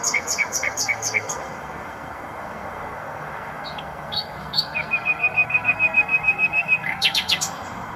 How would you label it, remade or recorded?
remade